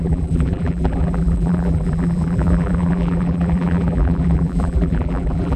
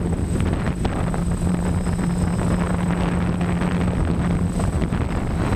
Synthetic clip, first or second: first